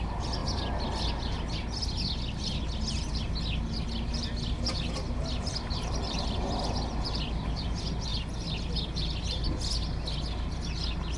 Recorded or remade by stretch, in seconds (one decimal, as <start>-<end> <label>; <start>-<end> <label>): 0.0-11.2 recorded